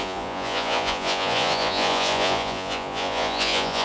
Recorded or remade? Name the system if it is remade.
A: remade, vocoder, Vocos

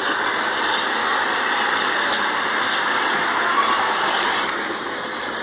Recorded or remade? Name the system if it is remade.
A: recorded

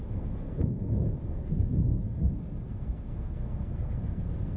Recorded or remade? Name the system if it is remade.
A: remade, codec, SNAC